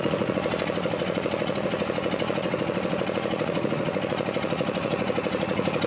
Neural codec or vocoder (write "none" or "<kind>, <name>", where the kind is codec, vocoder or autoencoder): vocoder, Vocos